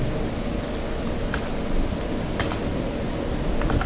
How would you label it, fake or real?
real